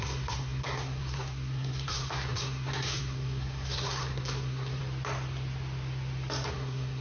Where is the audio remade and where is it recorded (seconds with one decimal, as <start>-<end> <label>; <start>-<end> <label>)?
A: 0.0-4.8 remade; 4.8-6.5 recorded; 6.5-7.0 remade

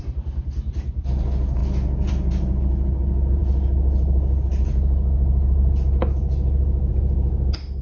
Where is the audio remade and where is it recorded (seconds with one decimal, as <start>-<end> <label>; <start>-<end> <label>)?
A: 0.0-7.8 recorded